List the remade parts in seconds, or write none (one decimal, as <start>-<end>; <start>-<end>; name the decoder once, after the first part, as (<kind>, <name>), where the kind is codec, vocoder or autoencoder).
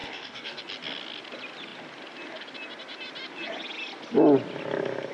0.0-0.6 (codec, DAC)